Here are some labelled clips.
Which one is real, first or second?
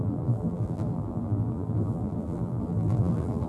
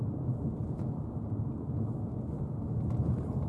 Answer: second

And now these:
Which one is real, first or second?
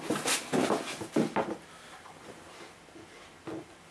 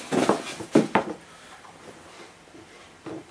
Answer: first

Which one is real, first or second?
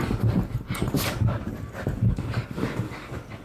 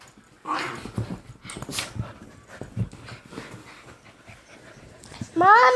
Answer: second